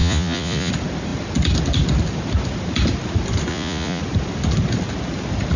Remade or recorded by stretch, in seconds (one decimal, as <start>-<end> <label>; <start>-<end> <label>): 0.0-0.7 remade; 0.7-3.5 recorded; 3.5-4.0 remade; 4.0-5.6 recorded